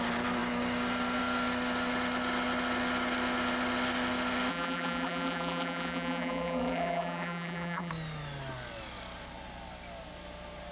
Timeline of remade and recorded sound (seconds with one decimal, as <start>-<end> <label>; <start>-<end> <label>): 0.0-4.5 recorded; 4.5-7.9 remade; 7.9-10.7 recorded